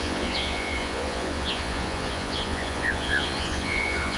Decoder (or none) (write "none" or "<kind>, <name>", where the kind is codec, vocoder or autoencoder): vocoder, Vocos